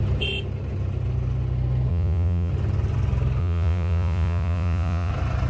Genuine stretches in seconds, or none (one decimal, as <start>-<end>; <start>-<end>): 0.0-1.9; 2.5-3.4; 5.1-5.5